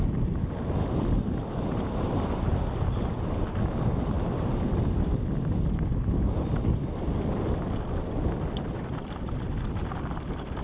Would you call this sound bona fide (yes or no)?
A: yes